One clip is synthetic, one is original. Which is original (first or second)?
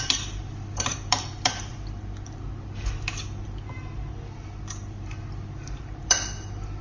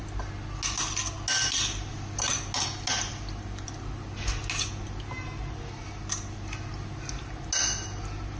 second